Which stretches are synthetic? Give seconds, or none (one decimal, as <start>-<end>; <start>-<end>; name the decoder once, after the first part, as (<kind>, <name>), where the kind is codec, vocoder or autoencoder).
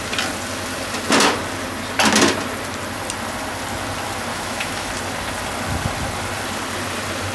4.3-4.9 (autoencoder, DAC-VAE)